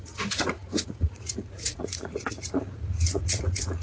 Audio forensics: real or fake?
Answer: fake